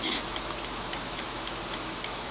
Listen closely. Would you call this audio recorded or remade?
remade